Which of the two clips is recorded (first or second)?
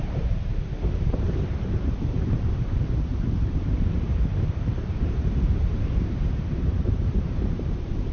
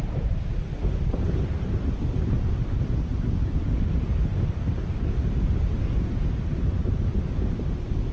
second